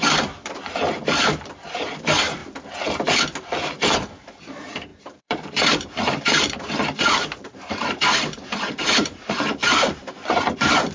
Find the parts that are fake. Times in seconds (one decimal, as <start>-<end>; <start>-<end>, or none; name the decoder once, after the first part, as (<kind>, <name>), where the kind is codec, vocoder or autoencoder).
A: 0.0-2.4 (vocoder, BigVGAN v2); 3.9-10.9